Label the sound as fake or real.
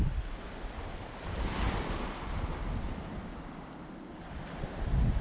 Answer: real